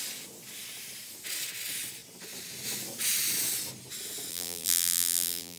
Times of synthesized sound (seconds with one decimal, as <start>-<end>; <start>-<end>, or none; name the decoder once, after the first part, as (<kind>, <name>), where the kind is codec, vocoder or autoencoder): 4.3-5.6 (vocoder, BigVGAN v2)